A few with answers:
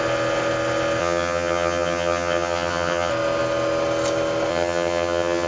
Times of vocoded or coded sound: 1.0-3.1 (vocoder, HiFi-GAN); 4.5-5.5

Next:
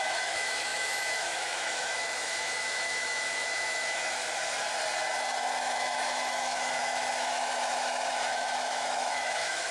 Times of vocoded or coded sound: 0.0-4.2 (autoencoder, DAC-VAE); 5.6-9.7

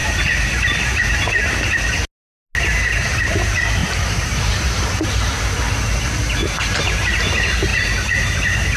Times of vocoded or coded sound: 0.0-1.6 (vocoder, BigVGAN v2); 3.8-5.2; 6.4-7.1; 7.7-8.8

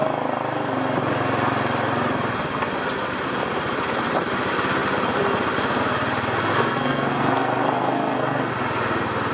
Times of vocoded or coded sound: 6.4-8.5 (codec, SNAC)

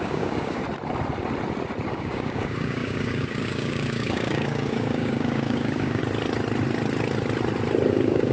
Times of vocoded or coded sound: 0.0-0.6 (codec, DAC); 1.9-6.0; 7.9-8.3

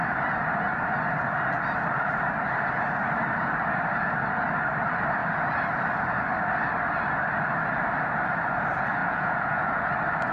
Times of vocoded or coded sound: 9.0-9.9 (vocoder, Vocos)

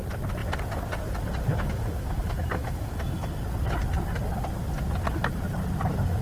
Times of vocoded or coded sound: 1.5-2.9 (autoencoder, DAC-VAE)

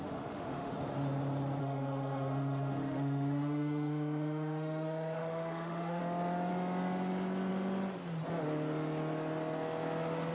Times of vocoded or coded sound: 0.0-0.7 (autoencoder, DAC-VAE); 1.6-6.0